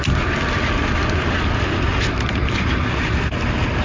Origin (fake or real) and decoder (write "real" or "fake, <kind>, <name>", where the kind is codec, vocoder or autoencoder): real